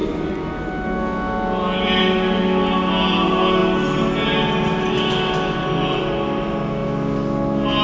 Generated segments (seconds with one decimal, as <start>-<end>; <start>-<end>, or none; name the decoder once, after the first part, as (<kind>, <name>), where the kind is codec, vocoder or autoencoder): none